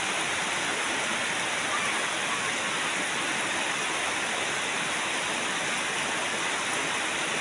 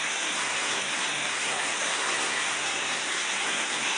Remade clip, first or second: second